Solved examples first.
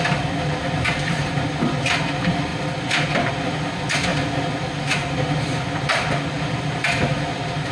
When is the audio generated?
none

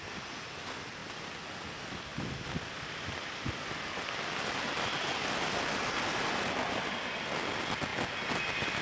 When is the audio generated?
none

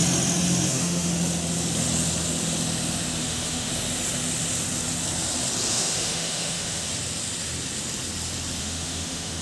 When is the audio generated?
0.7-1.1 (autoencoder, DAC-VAE); 3.2-3.7; 5.7-6.9; 8.6-9.4

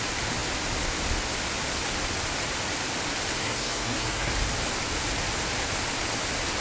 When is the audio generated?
3.4-4.3 (codec, SNAC)

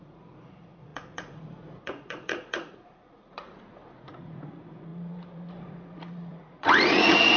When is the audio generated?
0.0-7.4 (vocoder, Vocos)

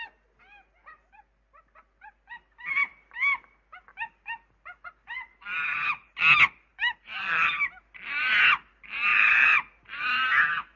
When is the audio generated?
6.7-7.5 (vocoder, BigVGAN v2); 9.1-9.8

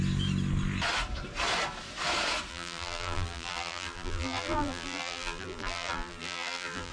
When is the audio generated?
2.5-6.9 (vocoder, BigVGAN v2)

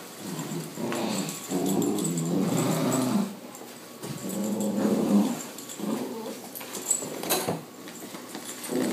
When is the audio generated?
4.2-7.7 (vocoder, BigVGAN v2)